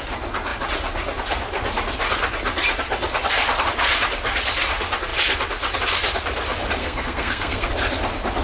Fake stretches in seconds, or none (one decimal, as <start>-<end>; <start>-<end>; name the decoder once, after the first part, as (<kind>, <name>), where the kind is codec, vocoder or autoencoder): 6.8-7.7 (codec, SNAC)

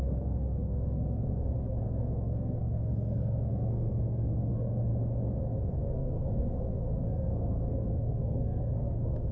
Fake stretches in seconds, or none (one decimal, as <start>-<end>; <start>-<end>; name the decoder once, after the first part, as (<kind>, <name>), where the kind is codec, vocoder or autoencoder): 0.0-4.9 (codec, SNAC); 5.7-9.3

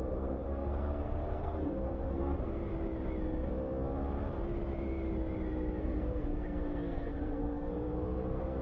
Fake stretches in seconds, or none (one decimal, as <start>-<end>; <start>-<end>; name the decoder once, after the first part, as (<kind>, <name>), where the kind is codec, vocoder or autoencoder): 0.0-2.7 (codec, SNAC); 5.8-8.6

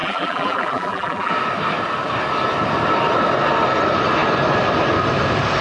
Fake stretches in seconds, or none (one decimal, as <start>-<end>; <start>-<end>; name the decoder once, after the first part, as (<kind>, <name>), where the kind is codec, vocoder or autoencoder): 0.0-1.3 (vocoder, BigVGAN v2)

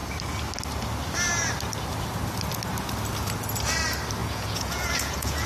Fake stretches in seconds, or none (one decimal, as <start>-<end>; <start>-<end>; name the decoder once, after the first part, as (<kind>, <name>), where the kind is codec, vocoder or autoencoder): 4.2-5.5 (vocoder, Vocos)

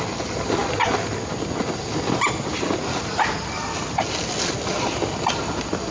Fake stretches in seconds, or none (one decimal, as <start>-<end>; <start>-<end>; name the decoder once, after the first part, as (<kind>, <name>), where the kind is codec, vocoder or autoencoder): none